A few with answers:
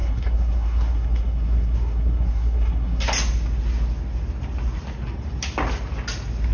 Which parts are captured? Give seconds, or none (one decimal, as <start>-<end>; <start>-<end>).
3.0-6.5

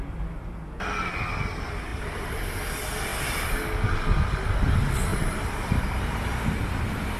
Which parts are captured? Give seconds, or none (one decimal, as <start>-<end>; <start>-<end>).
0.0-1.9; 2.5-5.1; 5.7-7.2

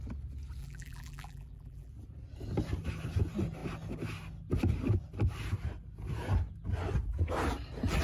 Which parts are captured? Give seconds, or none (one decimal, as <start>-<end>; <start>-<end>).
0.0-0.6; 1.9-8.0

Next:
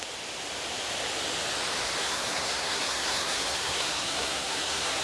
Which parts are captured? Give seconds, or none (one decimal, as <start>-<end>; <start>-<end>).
0.0-2.0